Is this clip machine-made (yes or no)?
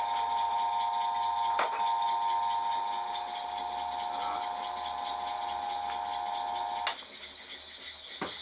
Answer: no